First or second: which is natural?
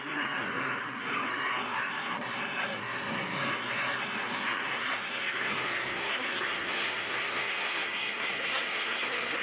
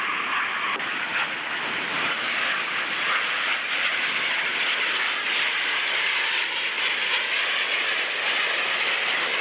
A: second